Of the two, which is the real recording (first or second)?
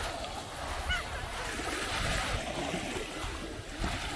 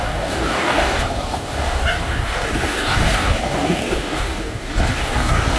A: first